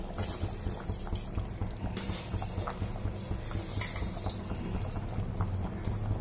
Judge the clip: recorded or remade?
recorded